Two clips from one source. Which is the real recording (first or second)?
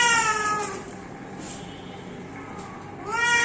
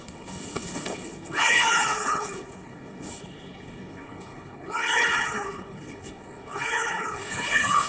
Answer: first